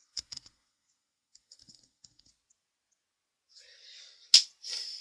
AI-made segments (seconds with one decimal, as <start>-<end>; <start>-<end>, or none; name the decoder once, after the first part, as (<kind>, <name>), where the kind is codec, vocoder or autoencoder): 0.0-2.3 (codec, SNAC)